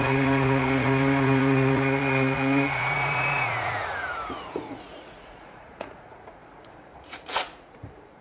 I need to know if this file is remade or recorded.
remade